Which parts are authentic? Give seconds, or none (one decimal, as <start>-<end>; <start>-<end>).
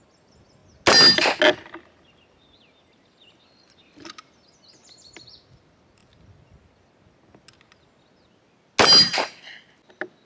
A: 0.0-10.3